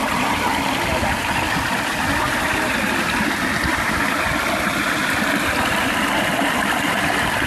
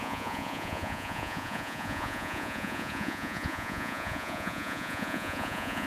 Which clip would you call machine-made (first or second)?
second